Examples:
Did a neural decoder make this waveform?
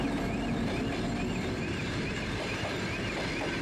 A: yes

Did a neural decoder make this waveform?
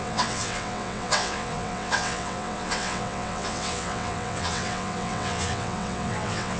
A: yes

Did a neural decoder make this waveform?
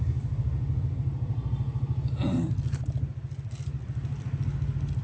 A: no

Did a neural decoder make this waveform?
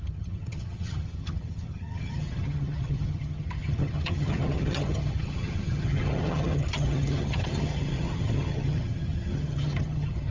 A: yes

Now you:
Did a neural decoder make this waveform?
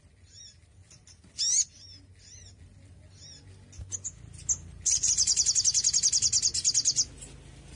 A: no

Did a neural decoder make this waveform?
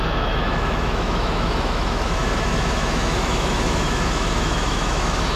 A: yes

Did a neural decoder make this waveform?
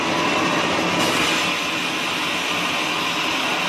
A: no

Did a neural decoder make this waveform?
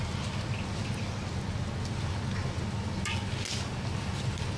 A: no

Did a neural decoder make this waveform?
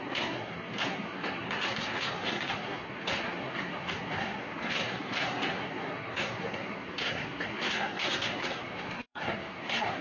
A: yes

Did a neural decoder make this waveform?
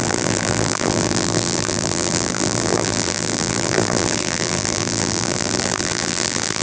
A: yes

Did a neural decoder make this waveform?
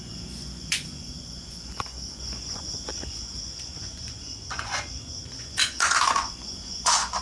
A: yes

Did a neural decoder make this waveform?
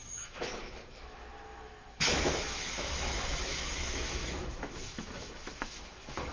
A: yes